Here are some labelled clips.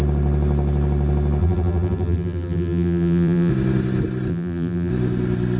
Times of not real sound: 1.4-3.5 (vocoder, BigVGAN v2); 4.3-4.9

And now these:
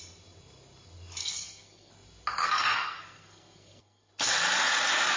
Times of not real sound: 1.2-1.9 (codec, SNAC); 2.3-4.1

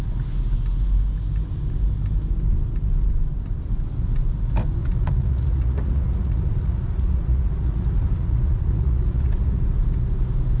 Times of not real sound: 4.8-9.6 (vocoder, Vocos)

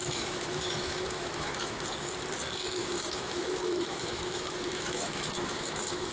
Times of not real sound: 0.0-1.8 (autoencoder, DAC-VAE); 2.8-6.1

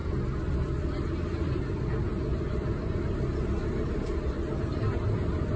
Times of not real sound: 3.6-5.6 (vocoder, BigVGAN v2)

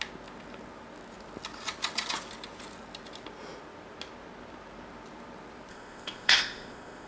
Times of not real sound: 5.7-7.1 (codec, ZipCodec)

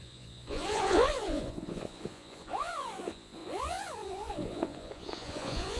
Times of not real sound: 0.0-5.8 (vocoder, Vocos)

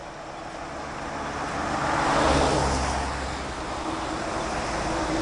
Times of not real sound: none